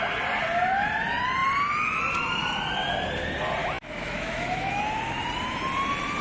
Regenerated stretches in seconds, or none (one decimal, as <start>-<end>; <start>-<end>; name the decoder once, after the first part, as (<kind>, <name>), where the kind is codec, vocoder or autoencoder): 3.6-4.8 (autoencoder, DAC-VAE)